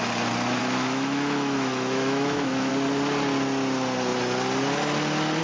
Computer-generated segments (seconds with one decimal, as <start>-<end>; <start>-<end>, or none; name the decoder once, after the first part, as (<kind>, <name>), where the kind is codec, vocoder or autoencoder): 0.6-2.7 (autoencoder, DAC-VAE)